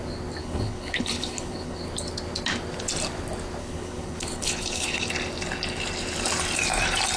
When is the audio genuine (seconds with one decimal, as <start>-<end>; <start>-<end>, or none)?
0.0-0.4; 1.8-3.6; 5.1-7.2